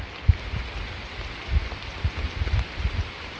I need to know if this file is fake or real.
real